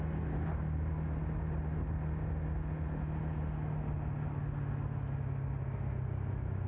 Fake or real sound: real